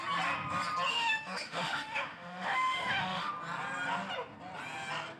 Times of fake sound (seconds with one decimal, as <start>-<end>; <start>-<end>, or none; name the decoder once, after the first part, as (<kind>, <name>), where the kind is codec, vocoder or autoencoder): 0.9-3.3 (autoencoder, DAC-VAE)